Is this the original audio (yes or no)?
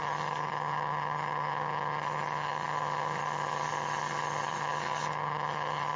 no